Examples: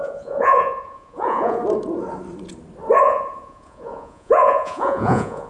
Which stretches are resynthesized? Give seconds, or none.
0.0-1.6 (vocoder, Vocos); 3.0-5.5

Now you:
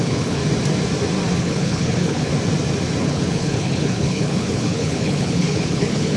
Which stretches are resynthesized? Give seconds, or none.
0.0-0.4 (codec, HILCodec); 1.4-2.3; 3.0-6.2

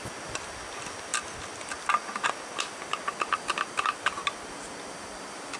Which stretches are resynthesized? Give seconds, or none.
none

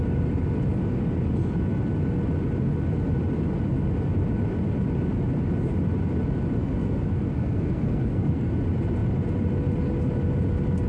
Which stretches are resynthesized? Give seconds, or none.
6.6-8.5 (codec, SNAC)

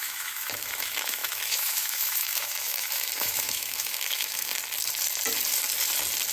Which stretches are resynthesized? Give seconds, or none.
0.0-4.5 (autoencoder, DAC-VAE)

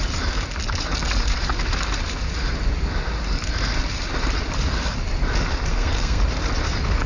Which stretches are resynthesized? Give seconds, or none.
5.7-6.2 (codec, SNAC)

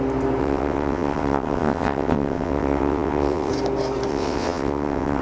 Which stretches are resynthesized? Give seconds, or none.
0.4-3.5 (vocoder, WaveNeXt); 4.1-5.2